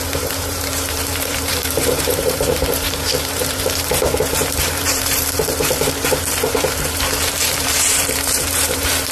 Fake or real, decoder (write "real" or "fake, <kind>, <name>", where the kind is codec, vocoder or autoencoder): fake, vocoder, BigVGAN v2